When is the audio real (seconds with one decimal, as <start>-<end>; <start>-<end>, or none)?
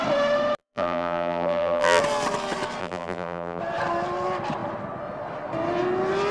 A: 0.0-0.6; 2.0-2.8; 3.6-6.3